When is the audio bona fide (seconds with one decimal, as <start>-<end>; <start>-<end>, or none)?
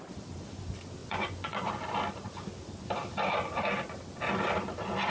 0.0-1.0; 1.7-5.1